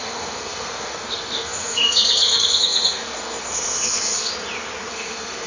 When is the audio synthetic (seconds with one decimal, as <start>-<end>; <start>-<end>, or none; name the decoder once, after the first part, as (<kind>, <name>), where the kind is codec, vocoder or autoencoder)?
0.0-4.3 (codec, SNAC); 4.9-5.5